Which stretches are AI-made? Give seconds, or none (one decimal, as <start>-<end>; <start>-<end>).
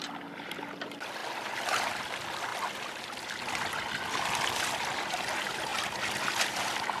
none